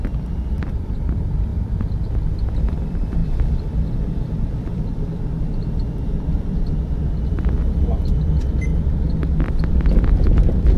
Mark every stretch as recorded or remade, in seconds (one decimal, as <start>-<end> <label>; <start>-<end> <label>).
0.0-10.8 remade